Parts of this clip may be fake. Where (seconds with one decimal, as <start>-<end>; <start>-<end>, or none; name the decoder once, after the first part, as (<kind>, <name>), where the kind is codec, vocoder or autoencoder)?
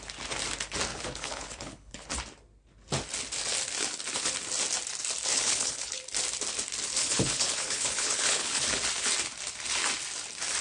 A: 0.9-2.1 (codec, HILCodec); 5.3-6.0; 7.0-8.8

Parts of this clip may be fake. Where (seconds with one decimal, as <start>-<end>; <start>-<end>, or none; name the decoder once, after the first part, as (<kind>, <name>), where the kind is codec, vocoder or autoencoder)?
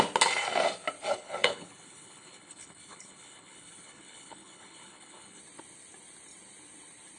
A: 1.1-5.4 (codec, HILCodec)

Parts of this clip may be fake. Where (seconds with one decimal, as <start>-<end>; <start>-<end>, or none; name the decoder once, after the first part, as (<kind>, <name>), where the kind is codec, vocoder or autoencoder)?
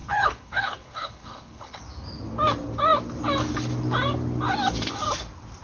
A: 0.0-1.8 (codec, HILCodec)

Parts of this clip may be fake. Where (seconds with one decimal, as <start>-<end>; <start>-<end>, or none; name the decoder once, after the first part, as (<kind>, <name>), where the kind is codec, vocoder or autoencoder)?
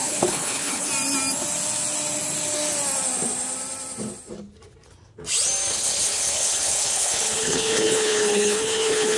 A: 0.0-0.9 (codec, HILCodec); 5.7-9.2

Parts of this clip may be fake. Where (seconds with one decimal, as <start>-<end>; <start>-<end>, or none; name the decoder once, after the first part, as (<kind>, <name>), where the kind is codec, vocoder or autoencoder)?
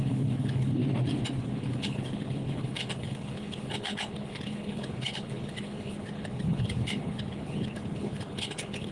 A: 0.0-0.8 (codec, HILCodec); 1.4-8.9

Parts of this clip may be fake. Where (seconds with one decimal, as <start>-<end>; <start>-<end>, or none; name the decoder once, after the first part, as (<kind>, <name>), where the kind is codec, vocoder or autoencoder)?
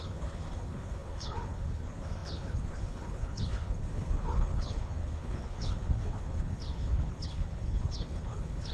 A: 0.0-8.7 (codec, HILCodec)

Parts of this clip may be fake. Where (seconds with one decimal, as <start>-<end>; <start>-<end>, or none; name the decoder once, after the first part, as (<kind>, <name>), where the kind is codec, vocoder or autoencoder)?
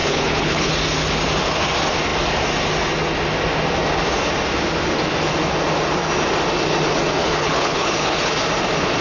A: 0.0-0.7 (codec, HILCodec); 7.2-8.3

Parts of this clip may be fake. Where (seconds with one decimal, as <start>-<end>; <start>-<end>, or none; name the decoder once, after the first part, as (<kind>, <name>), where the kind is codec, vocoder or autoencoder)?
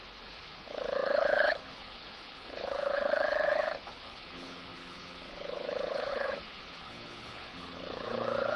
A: 0.0-8.6 (codec, HILCodec)